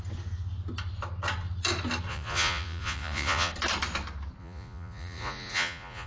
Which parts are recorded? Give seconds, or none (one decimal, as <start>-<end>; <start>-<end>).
0.0-2.1; 3.5-4.4